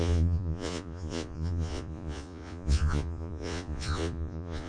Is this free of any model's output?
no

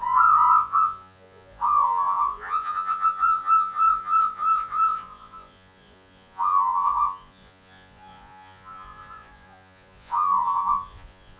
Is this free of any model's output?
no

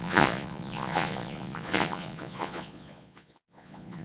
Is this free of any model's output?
no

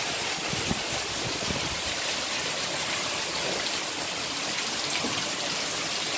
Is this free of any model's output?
yes